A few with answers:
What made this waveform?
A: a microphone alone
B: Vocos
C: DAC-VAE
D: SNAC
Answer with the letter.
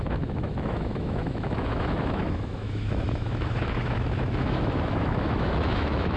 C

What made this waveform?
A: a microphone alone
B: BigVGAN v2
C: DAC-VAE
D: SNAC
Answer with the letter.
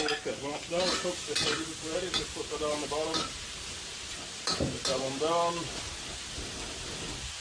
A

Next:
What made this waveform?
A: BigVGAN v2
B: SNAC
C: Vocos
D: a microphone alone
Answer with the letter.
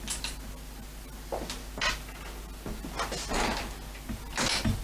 D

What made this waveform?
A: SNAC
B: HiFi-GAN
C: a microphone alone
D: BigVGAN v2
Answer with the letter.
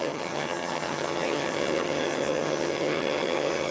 B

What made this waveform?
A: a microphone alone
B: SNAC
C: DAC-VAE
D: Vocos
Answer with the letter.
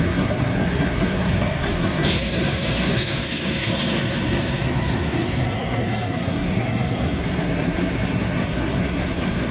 B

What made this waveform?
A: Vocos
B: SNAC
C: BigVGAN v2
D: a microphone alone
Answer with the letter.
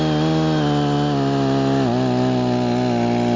D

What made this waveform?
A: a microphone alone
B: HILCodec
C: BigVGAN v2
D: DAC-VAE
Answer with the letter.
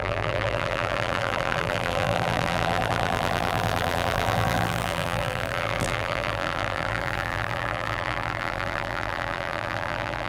C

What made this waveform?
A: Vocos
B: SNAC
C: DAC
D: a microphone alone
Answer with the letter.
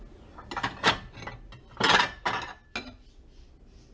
D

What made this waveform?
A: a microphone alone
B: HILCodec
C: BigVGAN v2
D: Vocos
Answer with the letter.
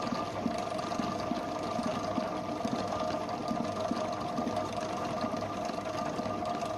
A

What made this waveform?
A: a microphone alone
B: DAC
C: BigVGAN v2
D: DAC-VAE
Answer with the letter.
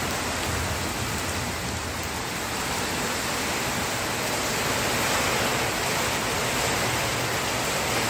A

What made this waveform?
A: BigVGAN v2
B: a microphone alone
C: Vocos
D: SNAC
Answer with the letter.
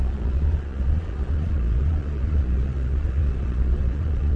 C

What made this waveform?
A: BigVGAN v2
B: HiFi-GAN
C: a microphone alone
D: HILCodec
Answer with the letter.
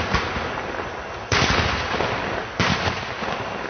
C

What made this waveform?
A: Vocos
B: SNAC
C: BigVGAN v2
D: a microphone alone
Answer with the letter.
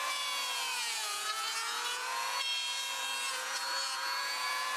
A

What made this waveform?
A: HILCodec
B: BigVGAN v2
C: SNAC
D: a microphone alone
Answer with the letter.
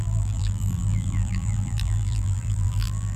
B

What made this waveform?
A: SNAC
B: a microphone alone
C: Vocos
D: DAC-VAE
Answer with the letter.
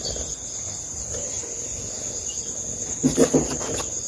B